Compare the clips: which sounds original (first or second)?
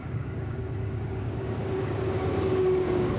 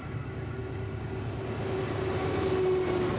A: second